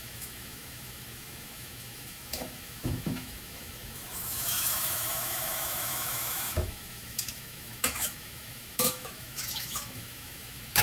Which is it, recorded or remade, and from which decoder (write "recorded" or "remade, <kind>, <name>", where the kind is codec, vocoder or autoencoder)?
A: remade, autoencoder, DAC-VAE